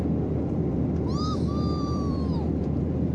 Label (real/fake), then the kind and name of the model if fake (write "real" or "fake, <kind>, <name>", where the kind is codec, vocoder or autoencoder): fake, vocoder, BigVGAN v2